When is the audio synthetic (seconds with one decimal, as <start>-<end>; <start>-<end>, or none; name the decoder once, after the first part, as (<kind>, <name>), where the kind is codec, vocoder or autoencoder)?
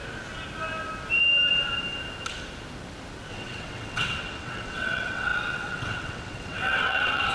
3.3-7.3 (vocoder, WaveNeXt)